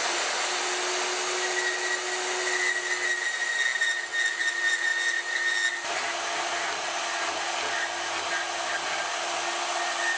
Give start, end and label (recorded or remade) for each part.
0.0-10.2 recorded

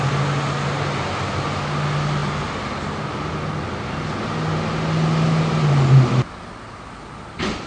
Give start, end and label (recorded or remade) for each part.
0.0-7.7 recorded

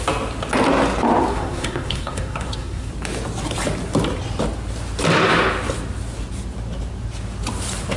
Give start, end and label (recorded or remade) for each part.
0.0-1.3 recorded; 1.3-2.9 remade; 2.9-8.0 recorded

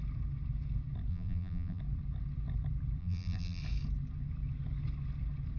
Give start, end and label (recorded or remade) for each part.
0.0-1.1 recorded; 1.1-1.8 remade; 1.8-3.0 recorded; 3.0-3.6 remade; 3.6-5.6 recorded

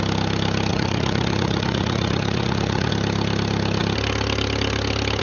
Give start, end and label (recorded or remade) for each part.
0.0-0.7 recorded; 0.7-2.9 remade; 2.9-5.2 recorded